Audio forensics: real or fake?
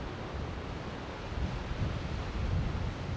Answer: real